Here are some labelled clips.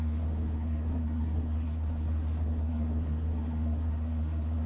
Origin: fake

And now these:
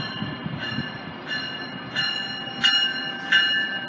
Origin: real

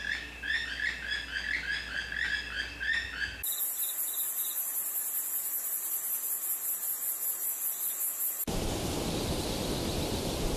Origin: real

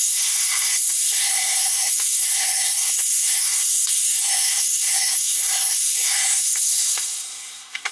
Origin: fake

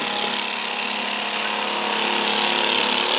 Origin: real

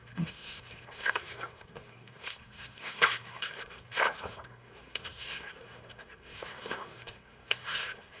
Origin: fake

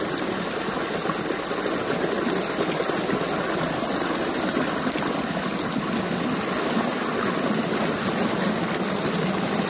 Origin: real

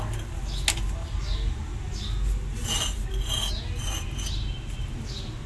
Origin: real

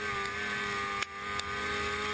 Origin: real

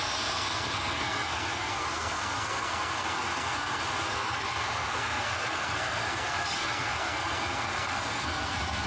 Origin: fake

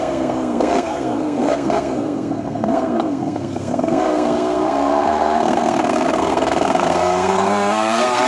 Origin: fake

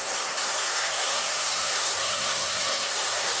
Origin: fake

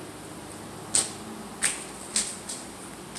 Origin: real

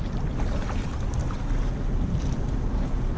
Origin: real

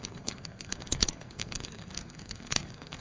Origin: fake